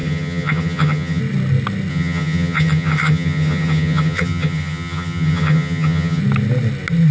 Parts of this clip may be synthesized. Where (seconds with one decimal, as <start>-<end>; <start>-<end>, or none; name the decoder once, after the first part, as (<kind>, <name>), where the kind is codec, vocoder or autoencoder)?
0.0-1.2 (vocoder, HiFi-GAN); 1.9-6.2